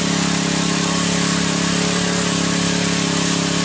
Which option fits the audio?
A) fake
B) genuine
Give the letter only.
B